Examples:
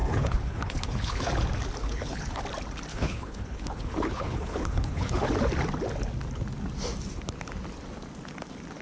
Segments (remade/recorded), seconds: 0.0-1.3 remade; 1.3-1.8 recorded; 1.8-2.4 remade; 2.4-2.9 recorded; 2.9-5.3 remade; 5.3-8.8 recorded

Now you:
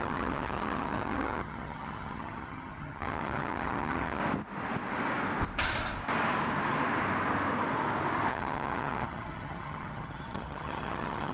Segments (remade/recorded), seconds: 0.0-4.2 remade; 4.2-8.3 recorded; 8.3-11.3 remade

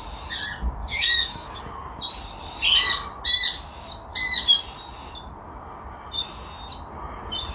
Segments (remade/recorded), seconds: 0.0-0.8 recorded; 0.8-1.6 remade; 1.6-7.5 recorded